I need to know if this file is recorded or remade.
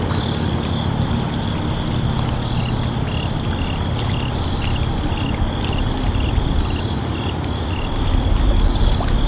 recorded